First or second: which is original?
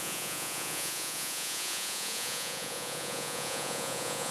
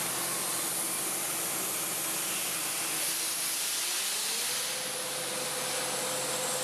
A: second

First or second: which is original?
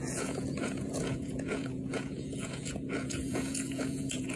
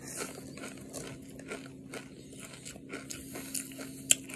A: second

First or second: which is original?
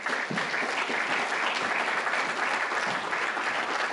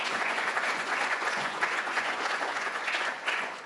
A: first